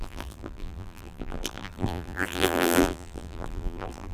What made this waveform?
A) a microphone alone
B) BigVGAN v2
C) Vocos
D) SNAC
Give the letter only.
B